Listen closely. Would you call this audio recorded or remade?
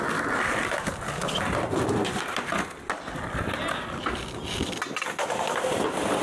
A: recorded